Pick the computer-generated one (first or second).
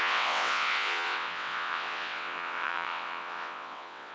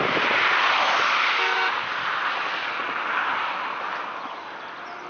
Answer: first